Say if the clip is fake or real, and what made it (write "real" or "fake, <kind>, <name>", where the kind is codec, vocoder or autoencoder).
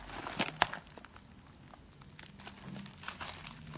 real